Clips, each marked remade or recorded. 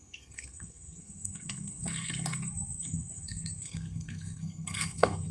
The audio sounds remade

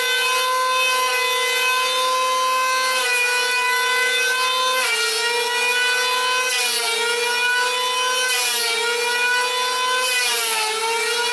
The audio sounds recorded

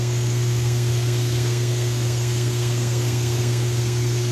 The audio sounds remade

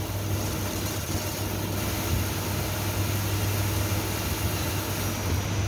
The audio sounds recorded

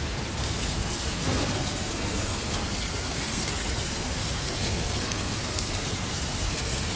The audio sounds remade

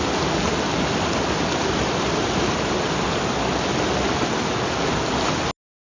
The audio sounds recorded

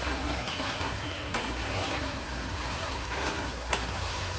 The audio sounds remade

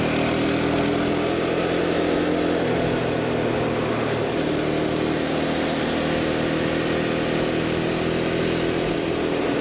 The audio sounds recorded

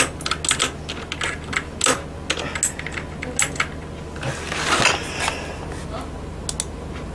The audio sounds recorded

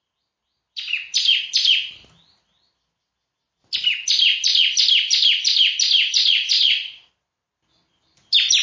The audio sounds recorded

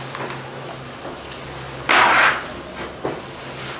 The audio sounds recorded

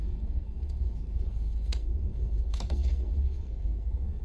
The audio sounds remade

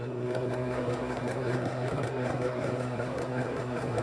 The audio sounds remade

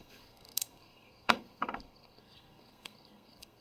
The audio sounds remade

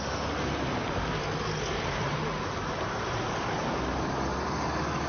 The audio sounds recorded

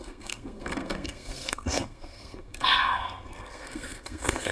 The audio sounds remade